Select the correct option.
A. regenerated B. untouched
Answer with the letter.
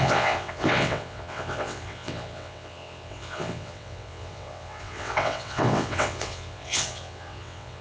A